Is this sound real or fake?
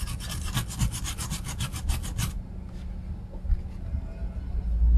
real